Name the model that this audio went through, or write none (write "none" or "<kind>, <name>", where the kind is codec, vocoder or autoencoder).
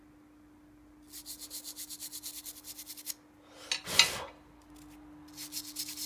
none